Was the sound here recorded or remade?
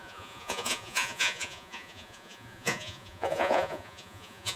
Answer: remade